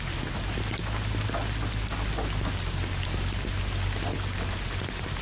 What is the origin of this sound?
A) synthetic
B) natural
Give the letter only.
B